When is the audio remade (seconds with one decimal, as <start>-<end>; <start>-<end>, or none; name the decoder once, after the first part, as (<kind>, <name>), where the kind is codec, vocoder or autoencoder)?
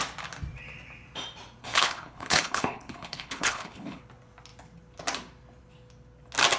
1.6-4.0 (codec, HILCodec)